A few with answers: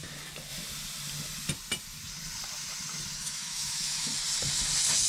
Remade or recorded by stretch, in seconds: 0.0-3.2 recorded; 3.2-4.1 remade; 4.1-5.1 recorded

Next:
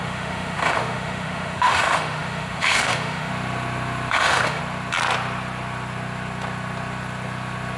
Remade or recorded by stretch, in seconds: 0.0-3.3 remade; 3.3-4.1 recorded; 4.1-4.6 remade; 4.6-7.8 recorded